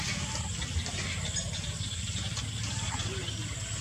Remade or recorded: recorded